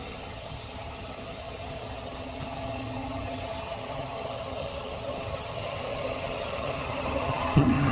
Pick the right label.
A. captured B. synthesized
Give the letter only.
B